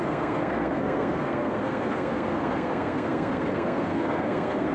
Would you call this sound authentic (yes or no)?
no